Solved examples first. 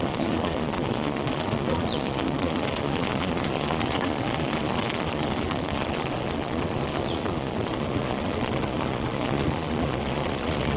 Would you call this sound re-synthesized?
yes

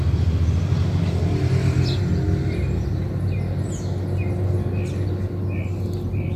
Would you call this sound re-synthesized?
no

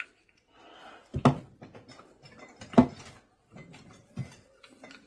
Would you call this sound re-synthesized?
no